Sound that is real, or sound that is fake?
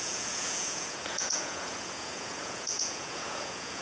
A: fake